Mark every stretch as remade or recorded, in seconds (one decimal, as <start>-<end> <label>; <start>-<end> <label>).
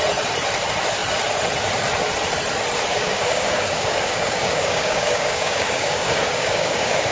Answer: 0.0-2.9 recorded; 2.9-7.1 remade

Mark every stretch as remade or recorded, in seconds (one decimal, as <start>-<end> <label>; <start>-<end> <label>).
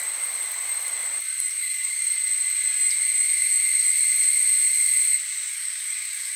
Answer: 0.0-1.6 recorded; 1.6-2.1 remade; 2.1-5.5 recorded; 5.5-6.4 remade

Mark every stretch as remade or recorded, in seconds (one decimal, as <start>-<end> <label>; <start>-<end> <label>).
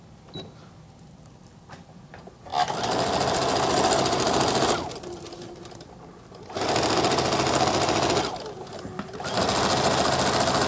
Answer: 0.0-10.7 recorded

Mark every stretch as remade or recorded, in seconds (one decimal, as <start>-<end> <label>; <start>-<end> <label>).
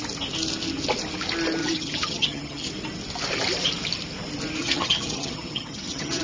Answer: 0.0-1.6 recorded; 1.6-2.7 remade; 2.7-4.6 recorded; 4.6-6.2 remade